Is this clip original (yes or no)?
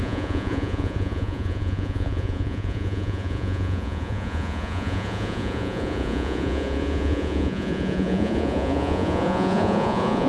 no